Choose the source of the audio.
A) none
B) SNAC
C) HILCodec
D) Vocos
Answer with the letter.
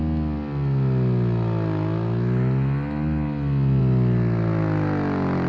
A